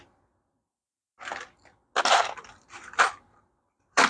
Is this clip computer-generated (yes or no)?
no